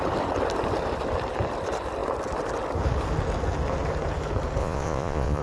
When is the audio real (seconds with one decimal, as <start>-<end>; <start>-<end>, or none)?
0.0-4.6